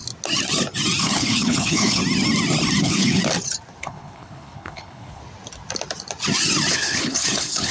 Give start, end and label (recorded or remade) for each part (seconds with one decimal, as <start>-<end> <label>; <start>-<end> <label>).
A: 0.0-1.0 recorded; 1.0-2.0 remade; 2.0-2.8 recorded; 2.8-3.2 remade; 3.2-3.8 recorded; 3.8-5.2 remade; 5.2-6.7 recorded; 6.7-7.7 remade